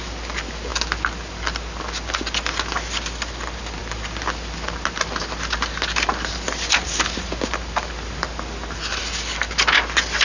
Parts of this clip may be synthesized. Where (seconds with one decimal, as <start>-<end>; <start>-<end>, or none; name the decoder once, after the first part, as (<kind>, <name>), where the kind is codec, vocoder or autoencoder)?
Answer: none